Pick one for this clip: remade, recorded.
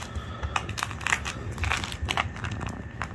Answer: recorded